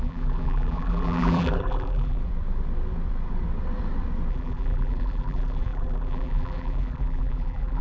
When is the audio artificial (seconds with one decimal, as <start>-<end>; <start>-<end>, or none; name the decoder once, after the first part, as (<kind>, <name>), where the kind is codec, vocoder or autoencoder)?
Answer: 0.0-2.2 (vocoder, BigVGAN v2); 4.3-7.8